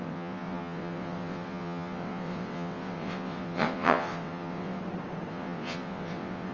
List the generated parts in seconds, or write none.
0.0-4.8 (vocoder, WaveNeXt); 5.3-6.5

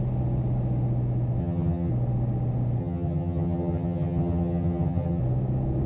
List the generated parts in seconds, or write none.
1.4-1.9 (vocoder, HiFi-GAN); 2.8-5.2

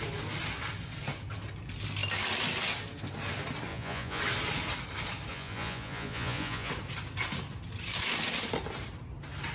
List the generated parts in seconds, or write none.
3.7-4.2 (vocoder, Vocos); 5.3-6.7

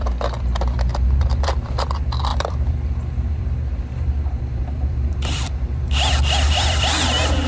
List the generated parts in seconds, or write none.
0.0-7.5 (vocoder, BigVGAN v2)